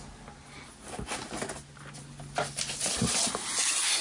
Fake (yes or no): no